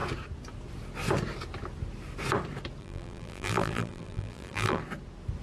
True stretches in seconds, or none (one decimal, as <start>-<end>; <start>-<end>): 0.0-2.8; 4.8-5.4